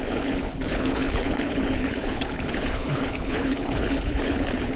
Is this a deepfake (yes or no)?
yes